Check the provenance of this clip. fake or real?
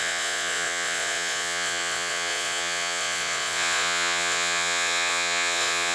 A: fake